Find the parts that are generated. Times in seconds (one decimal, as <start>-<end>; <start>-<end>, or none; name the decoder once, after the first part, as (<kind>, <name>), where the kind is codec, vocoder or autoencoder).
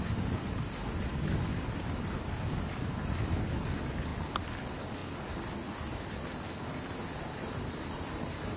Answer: none